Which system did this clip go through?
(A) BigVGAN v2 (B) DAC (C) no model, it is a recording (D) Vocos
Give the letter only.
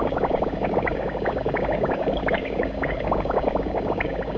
B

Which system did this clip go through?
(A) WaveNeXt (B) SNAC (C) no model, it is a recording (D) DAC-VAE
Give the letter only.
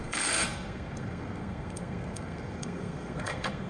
B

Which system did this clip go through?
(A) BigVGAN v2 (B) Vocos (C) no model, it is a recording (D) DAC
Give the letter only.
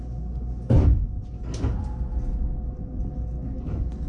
C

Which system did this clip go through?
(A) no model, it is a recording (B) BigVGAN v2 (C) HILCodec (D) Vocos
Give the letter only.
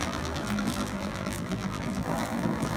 B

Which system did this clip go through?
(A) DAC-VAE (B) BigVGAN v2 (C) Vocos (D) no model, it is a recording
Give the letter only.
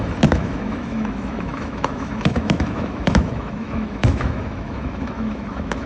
A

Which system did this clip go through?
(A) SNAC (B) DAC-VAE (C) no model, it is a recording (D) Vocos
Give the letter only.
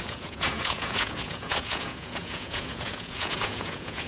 D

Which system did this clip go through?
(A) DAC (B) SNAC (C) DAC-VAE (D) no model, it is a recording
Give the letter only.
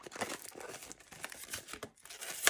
D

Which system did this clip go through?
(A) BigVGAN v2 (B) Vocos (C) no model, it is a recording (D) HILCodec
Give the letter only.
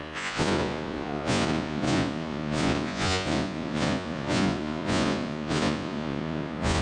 B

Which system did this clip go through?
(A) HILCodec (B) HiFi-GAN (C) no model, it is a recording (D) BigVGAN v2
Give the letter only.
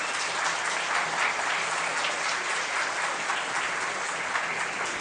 C